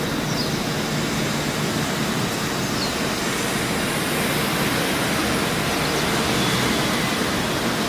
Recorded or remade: recorded